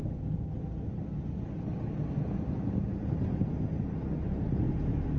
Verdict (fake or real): real